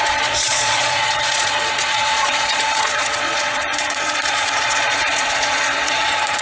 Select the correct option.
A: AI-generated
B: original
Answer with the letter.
A